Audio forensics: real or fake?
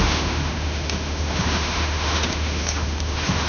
fake